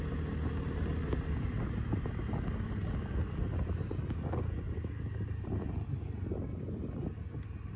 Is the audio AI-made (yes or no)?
no